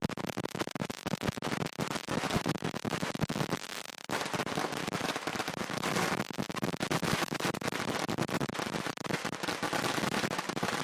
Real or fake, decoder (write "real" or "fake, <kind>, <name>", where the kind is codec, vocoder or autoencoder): real